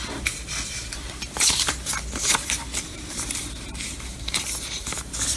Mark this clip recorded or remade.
remade